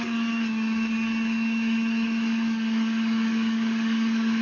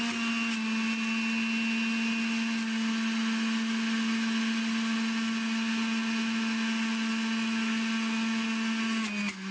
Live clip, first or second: second